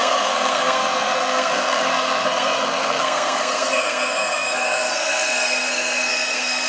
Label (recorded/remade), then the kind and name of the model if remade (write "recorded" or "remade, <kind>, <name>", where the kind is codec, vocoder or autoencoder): remade, codec, SNAC